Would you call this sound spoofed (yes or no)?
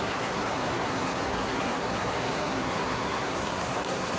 yes